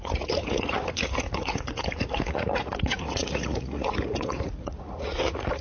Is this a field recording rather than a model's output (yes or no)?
no